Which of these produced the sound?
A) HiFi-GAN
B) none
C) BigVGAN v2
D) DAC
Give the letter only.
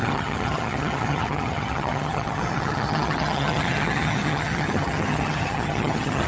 A